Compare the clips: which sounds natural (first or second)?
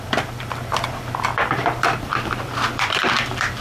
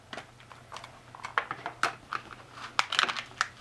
second